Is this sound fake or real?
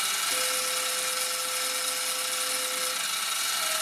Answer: real